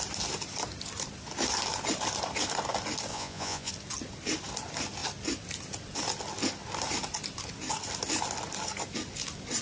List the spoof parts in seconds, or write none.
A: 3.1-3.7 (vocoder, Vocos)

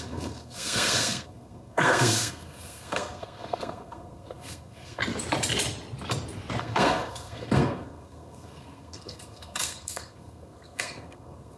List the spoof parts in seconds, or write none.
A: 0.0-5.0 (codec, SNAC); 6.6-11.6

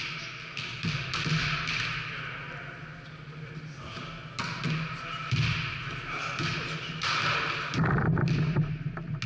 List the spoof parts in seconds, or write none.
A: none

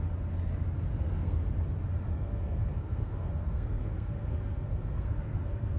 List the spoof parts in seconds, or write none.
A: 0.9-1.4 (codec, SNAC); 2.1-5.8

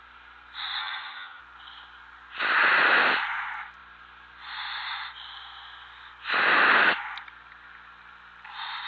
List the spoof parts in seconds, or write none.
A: 0.8-1.4 (vocoder, HiFi-GAN)